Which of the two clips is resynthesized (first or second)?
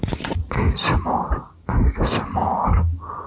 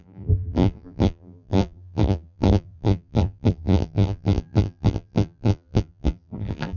second